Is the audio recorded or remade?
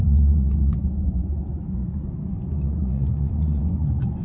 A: remade